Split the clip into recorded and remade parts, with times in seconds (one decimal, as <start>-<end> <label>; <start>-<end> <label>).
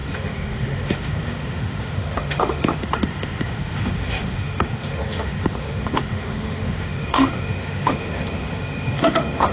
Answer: 0.0-9.5 remade